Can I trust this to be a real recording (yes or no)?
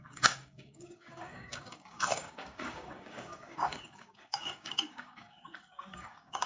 no